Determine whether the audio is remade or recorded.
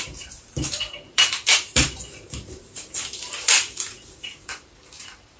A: remade